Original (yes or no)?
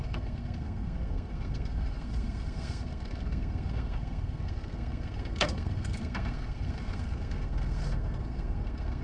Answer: no